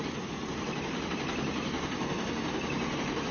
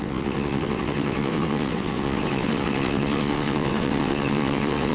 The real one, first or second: first